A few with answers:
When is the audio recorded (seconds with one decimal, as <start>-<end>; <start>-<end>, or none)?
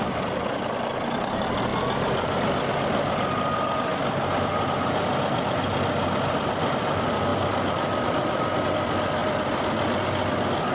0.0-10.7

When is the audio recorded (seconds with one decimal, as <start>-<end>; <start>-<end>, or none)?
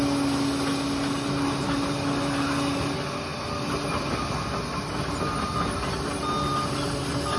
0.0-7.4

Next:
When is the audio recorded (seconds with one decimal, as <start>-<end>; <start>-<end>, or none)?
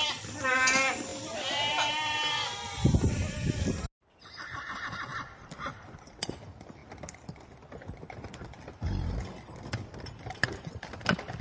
0.0-5.1; 6.3-11.4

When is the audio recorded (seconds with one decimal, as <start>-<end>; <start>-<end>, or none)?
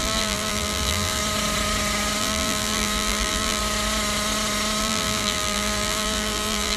1.2-2.2; 3.6-4.8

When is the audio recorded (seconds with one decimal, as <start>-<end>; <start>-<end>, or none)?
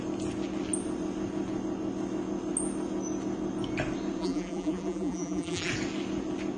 0.0-4.2; 5.7-6.6